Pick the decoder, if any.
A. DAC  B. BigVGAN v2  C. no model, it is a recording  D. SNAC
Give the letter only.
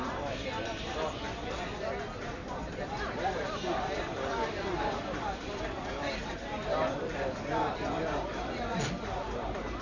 B